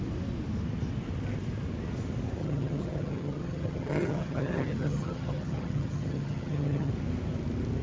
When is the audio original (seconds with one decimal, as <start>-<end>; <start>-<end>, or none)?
0.0-2.4; 6.9-7.8